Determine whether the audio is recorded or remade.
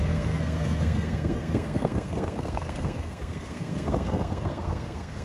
remade